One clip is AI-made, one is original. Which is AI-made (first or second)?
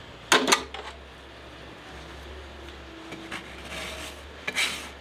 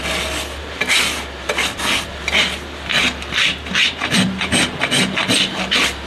second